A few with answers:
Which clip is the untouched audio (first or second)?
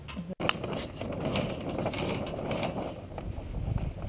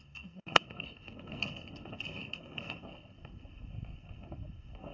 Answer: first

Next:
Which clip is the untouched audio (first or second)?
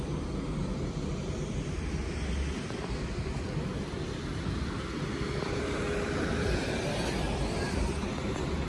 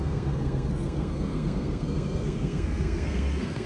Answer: first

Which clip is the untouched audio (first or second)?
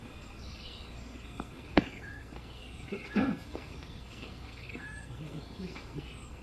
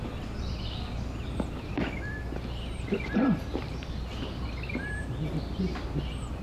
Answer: second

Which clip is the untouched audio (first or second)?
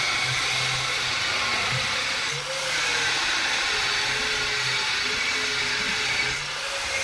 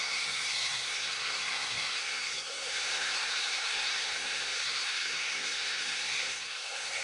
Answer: first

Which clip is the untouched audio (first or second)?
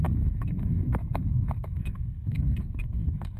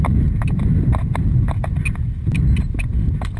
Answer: second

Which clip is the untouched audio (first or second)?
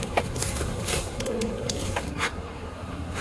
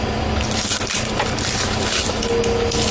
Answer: second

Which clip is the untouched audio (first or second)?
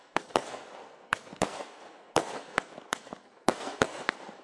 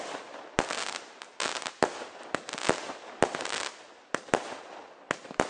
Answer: second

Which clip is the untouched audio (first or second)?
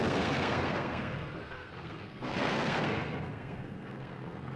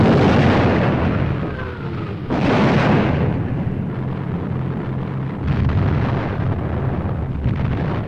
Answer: second